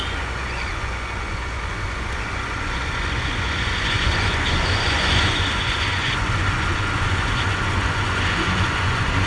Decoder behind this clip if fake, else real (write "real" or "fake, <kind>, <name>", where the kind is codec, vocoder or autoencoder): fake, vocoder, Vocos